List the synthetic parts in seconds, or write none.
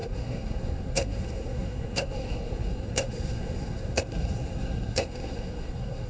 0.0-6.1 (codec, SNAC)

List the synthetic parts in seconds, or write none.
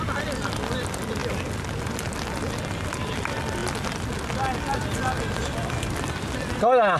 none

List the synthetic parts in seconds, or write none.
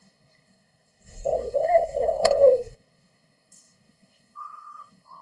0.0-5.2 (codec, SNAC)